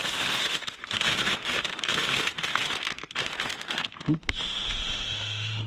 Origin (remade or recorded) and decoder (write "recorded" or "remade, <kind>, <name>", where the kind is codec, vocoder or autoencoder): remade, autoencoder, DAC-VAE